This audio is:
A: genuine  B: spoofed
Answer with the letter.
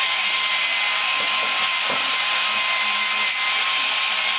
A